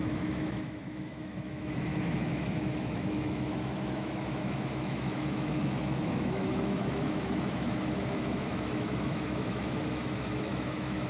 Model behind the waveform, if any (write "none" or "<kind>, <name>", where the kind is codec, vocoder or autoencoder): autoencoder, DAC-VAE